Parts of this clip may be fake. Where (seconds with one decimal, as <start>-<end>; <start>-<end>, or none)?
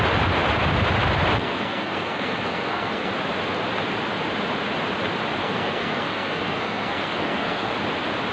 1.4-3.1; 5.4-7.7